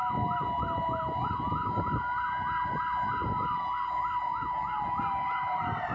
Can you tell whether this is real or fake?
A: real